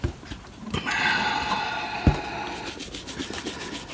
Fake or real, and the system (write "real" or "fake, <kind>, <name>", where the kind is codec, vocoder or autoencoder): real